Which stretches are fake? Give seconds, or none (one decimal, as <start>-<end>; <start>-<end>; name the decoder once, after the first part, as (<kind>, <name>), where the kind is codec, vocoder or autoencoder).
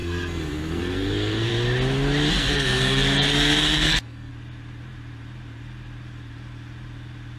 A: 0.0-1.5 (codec, SNAC); 2.3-4.3